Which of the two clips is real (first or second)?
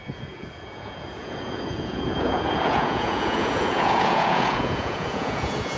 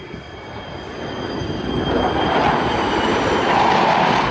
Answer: second